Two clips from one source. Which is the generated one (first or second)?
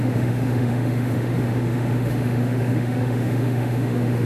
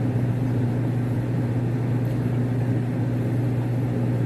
first